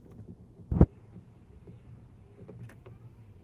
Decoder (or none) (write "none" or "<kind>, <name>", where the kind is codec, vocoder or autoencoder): vocoder, BigVGAN v2